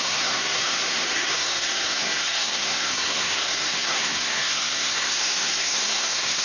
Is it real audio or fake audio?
fake